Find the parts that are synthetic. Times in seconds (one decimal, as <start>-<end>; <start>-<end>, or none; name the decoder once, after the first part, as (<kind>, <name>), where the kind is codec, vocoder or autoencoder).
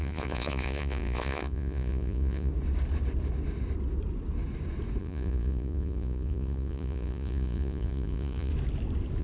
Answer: 0.0-2.5 (vocoder, Vocos); 5.0-8.5